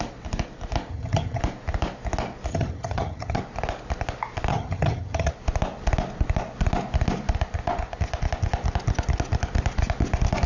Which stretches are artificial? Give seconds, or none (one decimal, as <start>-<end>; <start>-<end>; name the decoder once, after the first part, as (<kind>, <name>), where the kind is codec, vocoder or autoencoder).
0.9-1.4 (vocoder, HiFi-GAN); 2.5-3.4; 4.5-5.3